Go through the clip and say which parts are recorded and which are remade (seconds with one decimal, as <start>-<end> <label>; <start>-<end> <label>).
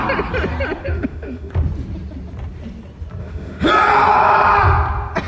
0.0-0.8 recorded; 0.8-1.5 remade; 1.5-3.2 recorded; 3.2-3.7 remade; 3.7-5.3 recorded